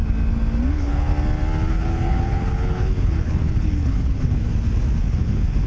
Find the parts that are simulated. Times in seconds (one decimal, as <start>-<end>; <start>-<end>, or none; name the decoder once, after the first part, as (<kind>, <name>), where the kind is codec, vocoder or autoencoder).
0.7-1.1 (codec, HILCodec); 1.7-4.4; 5.0-5.7